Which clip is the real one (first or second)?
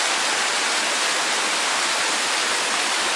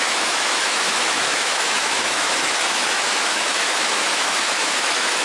first